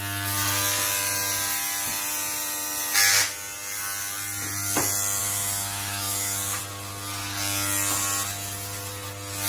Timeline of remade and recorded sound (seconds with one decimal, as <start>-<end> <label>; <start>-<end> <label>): 0.0-5.2 recorded; 5.2-6.6 remade; 6.6-9.5 recorded